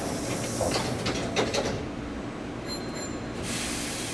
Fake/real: real